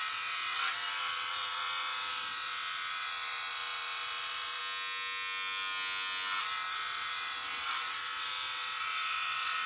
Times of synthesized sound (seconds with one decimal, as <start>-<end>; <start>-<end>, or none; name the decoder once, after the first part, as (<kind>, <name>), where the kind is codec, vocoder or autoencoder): 0.0-4.6 (vocoder, WaveNeXt); 6.4-9.7